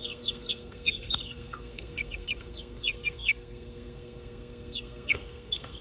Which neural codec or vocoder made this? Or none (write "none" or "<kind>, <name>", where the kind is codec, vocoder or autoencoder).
codec, SNAC